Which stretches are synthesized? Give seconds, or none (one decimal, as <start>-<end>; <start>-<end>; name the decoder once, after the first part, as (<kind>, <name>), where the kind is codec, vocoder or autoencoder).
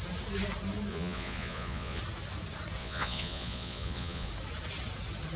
0.9-2.0 (vocoder, Vocos); 2.8-4.3